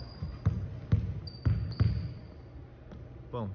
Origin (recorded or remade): recorded